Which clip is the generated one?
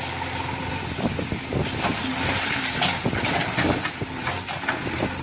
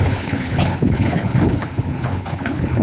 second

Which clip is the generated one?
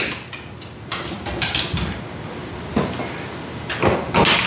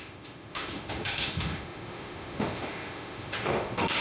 second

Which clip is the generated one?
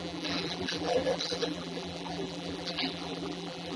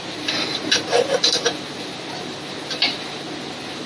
first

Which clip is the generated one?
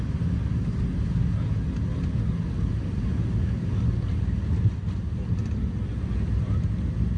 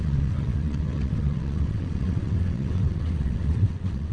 second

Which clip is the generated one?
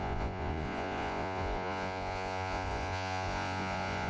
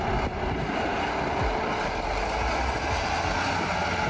first